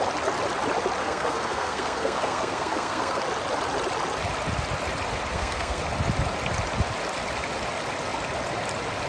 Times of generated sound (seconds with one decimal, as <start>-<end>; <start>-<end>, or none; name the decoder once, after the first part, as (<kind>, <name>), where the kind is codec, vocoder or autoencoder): 1.0-3.2 (codec, SNAC); 5.3-5.8